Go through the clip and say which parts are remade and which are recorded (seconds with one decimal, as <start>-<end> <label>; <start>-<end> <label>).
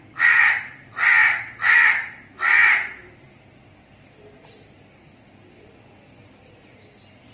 0.0-7.3 recorded